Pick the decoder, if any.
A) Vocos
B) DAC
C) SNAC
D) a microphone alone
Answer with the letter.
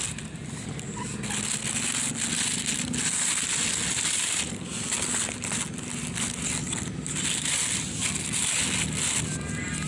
D